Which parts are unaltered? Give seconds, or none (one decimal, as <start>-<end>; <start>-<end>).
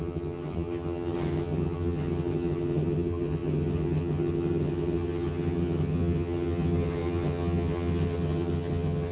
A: none